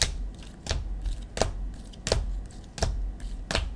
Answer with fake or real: real